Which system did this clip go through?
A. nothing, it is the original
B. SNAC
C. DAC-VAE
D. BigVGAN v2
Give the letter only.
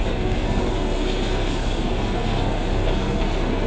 B